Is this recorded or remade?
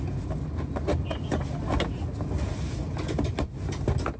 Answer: recorded